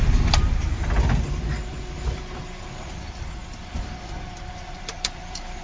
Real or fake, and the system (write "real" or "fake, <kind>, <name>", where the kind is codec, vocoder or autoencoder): fake, vocoder, BigVGAN v2